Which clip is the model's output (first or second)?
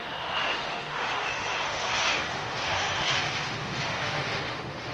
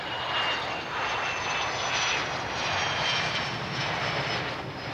first